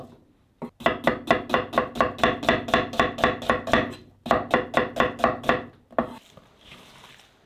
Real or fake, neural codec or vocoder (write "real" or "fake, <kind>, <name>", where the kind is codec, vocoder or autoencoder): real